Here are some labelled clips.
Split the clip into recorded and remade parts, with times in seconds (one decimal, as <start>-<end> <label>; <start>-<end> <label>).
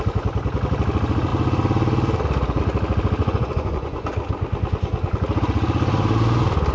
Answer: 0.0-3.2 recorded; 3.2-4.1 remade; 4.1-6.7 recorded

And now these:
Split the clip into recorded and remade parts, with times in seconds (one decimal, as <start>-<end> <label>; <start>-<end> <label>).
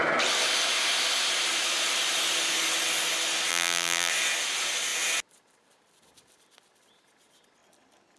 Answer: 0.0-3.5 recorded; 3.5-4.1 remade; 4.1-8.2 recorded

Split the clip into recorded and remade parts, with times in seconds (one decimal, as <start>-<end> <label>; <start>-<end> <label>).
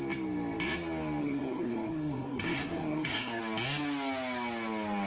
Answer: 0.0-1.2 recorded; 1.2-3.4 remade; 3.4-5.1 recorded